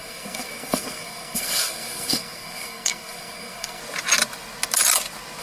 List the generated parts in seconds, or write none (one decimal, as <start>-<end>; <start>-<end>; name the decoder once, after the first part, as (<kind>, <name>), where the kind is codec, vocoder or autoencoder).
0.0-3.8 (codec, SNAC)